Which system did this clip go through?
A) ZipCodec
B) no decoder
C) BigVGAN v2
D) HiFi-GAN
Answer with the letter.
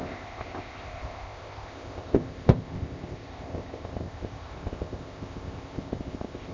A